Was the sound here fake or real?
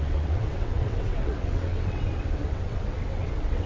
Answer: fake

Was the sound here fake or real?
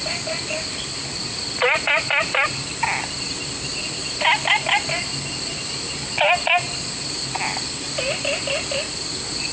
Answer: real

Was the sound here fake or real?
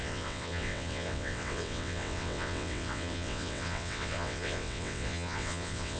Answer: fake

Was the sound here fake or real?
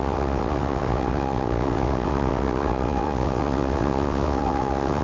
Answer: fake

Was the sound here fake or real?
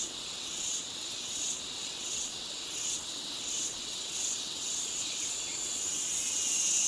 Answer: fake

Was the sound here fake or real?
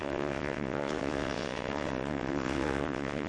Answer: fake